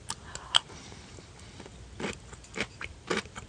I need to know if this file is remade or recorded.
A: recorded